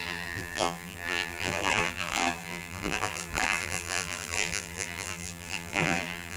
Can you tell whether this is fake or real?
fake